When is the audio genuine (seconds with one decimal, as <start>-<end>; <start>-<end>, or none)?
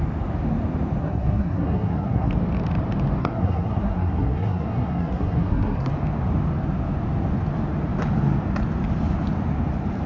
0.0-1.0; 2.3-3.2; 5.9-10.1